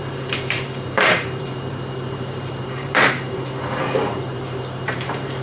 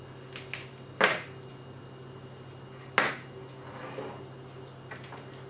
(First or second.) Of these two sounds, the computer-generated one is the first